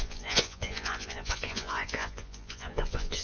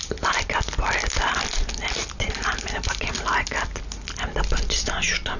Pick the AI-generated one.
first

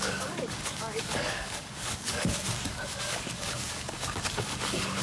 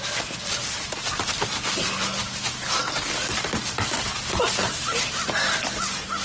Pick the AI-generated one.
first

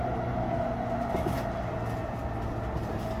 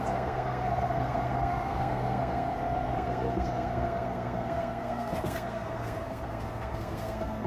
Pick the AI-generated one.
second